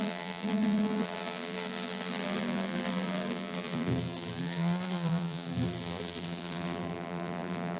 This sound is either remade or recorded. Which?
remade